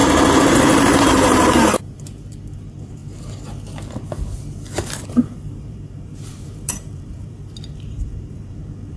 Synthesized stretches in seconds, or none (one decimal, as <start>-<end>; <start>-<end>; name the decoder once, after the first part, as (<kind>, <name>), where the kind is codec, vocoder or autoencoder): 1.0-3.0 (vocoder, BigVGAN v2); 5.0-9.0